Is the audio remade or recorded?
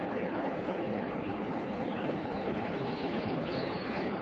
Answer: remade